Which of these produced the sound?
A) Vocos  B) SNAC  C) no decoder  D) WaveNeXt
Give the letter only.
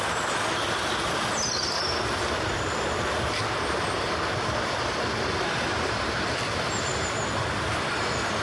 C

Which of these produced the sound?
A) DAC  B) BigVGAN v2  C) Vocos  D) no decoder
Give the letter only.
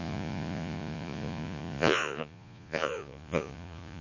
C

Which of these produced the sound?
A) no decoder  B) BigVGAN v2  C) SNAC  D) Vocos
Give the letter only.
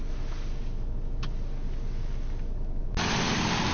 A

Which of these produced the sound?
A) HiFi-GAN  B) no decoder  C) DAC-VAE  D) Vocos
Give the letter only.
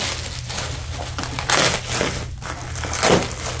B